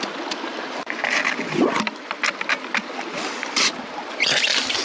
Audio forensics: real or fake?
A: real